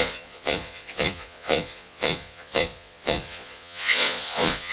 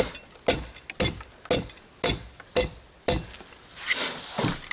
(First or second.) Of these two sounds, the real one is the second